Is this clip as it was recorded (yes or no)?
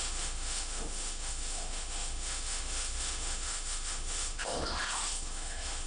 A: no